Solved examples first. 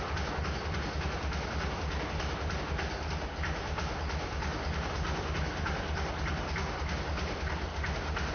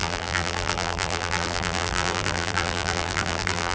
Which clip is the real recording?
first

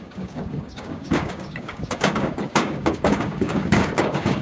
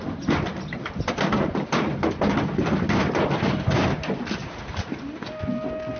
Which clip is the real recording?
second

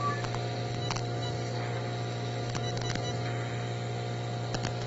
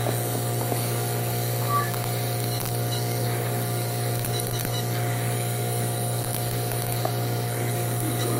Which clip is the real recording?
first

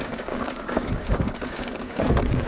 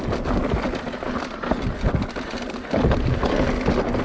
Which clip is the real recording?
second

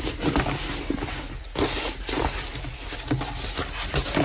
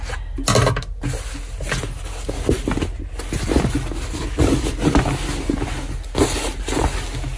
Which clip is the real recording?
second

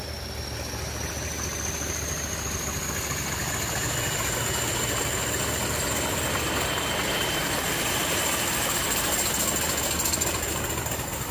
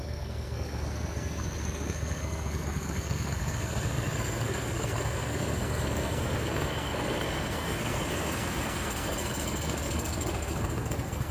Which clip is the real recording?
first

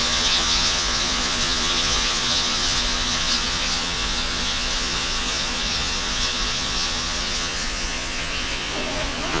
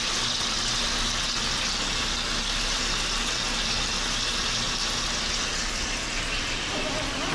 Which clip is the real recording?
second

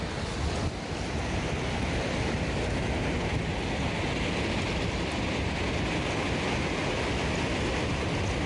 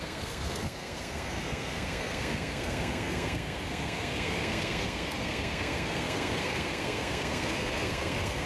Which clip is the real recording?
first